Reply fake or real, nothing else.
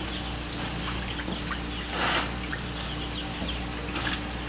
real